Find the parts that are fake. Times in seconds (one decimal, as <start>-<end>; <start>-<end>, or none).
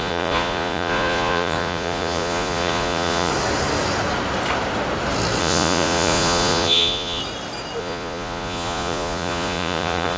0.0-3.3; 5.4-7.2; 7.8-10.2